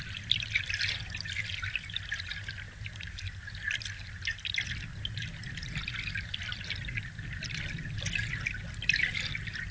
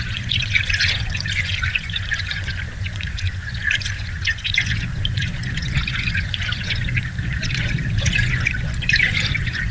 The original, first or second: first